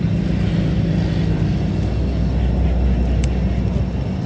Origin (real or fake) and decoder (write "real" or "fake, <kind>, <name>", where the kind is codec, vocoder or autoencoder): real